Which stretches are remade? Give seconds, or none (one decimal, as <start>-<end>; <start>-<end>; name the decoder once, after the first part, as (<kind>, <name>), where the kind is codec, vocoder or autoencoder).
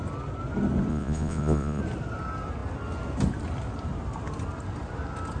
0.9-1.8 (vocoder, Vocos)